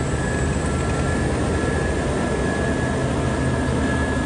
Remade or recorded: recorded